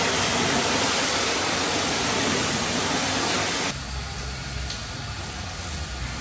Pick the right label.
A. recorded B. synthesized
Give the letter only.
A